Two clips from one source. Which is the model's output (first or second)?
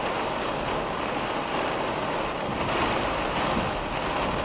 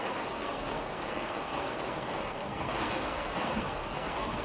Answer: second